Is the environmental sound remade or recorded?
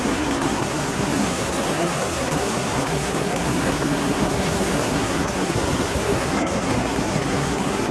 remade